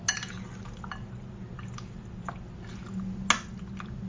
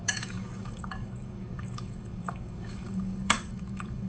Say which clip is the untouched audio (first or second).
first